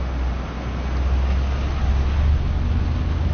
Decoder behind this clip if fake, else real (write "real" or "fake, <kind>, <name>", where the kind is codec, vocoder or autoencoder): real